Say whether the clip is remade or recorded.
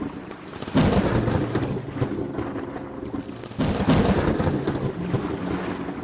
recorded